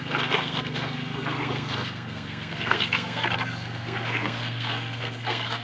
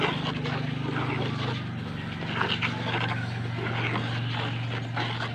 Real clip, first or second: second